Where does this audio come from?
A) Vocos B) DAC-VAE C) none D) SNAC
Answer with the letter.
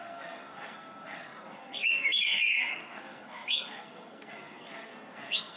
D